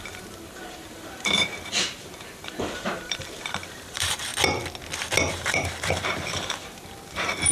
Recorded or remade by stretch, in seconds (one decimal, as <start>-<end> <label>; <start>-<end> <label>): 0.0-4.3 remade; 4.3-5.3 recorded; 5.3-7.5 remade